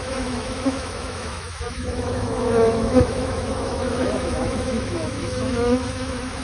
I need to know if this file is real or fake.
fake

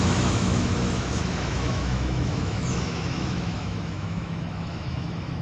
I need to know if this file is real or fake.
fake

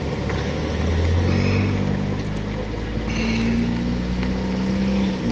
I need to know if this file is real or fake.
real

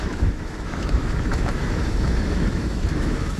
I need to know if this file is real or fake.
fake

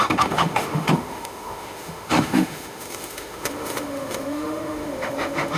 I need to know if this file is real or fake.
fake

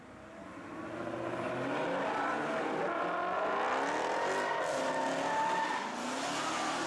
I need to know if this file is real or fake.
real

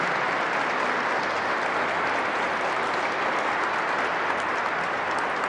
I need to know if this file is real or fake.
real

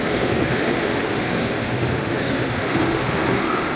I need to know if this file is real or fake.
fake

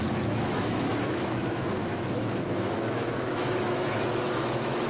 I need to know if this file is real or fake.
fake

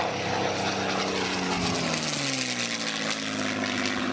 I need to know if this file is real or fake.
real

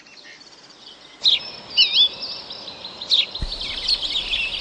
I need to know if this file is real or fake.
real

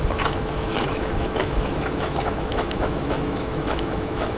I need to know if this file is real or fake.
fake